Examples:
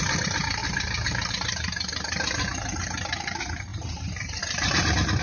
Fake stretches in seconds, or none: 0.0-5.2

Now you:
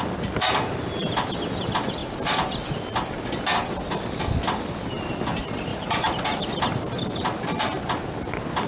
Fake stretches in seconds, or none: 5.7-6.5

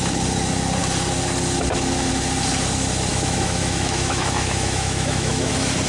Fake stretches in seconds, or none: 3.1-5.5